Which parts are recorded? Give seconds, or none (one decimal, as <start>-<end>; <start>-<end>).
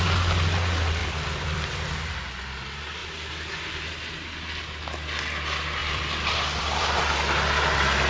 0.0-1.0; 1.9-5.8; 6.9-8.1